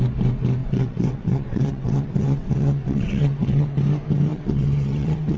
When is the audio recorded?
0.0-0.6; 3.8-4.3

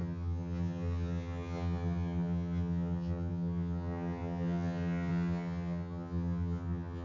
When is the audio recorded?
none

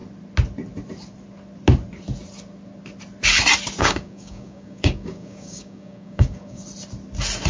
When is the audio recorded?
0.0-3.8; 6.6-7.5

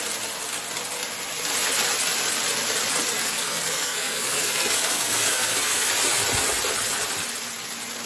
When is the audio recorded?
0.0-3.2; 5.9-8.1

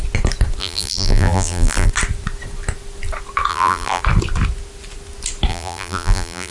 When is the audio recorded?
0.0-0.6; 1.9-3.5; 4.0-5.5

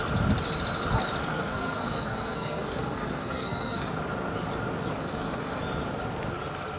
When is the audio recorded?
0.0-1.3; 3.9-5.0; 5.6-6.8

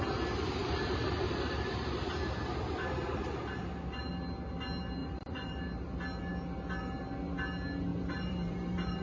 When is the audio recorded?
0.0-0.6; 4.1-5.0; 5.6-7.9